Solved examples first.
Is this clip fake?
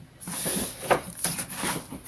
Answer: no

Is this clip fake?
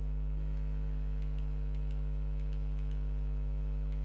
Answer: yes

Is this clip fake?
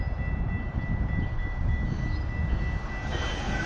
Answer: no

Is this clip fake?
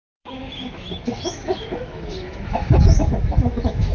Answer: yes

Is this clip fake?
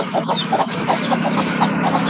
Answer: yes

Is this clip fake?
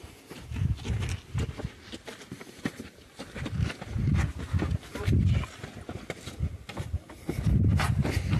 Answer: no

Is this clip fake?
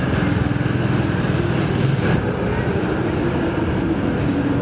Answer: no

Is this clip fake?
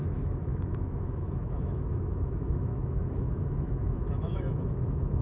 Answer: yes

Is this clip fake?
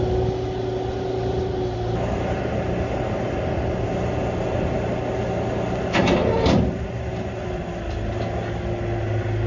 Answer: no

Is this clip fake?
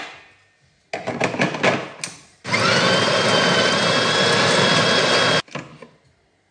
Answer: no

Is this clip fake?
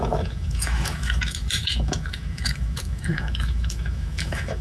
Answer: yes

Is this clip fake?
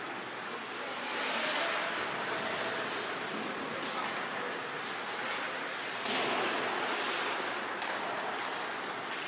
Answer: no